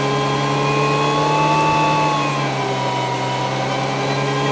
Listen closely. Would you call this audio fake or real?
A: real